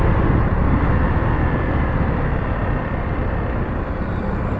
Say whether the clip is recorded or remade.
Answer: remade